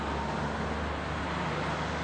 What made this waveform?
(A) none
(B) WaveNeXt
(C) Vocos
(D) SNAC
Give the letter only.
A